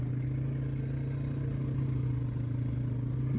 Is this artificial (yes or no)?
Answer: no